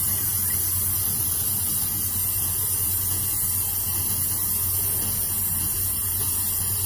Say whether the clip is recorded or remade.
recorded